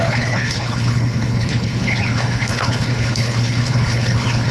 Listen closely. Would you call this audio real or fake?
fake